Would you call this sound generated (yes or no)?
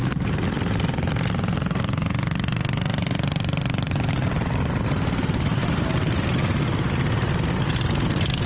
no